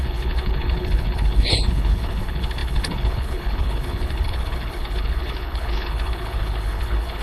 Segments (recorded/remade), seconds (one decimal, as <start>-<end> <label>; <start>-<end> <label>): 0.0-7.2 remade